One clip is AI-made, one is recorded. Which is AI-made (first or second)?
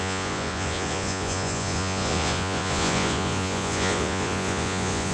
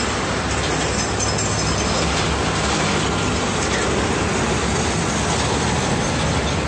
first